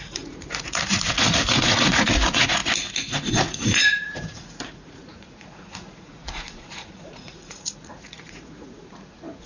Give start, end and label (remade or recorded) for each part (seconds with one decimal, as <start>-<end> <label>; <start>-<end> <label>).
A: 0.0-2.6 remade; 2.6-3.3 recorded; 3.3-9.5 remade